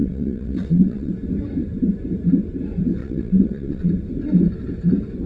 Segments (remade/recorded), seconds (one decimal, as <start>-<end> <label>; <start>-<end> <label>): 0.0-1.1 remade; 1.1-3.0 recorded; 3.0-3.9 remade; 3.9-5.3 recorded